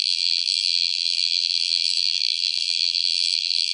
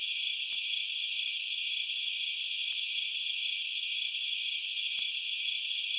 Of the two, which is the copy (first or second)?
first